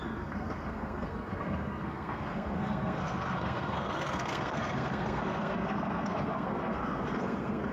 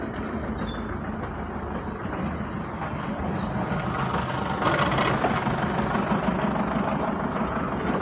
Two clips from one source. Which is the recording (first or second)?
second